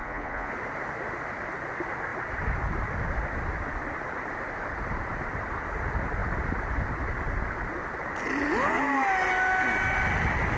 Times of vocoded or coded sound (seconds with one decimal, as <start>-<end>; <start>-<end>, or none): 0.0-0.5